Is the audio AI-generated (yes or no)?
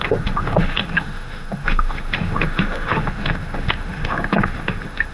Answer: yes